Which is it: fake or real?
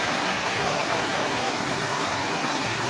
fake